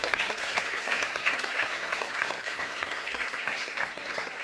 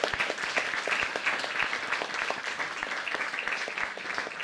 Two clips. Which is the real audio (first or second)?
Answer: second